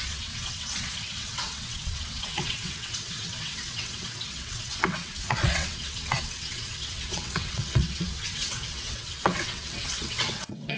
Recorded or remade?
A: remade